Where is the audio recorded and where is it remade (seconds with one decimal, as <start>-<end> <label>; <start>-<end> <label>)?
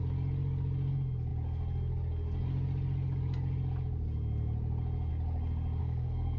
0.0-5.8 recorded; 5.8-6.4 remade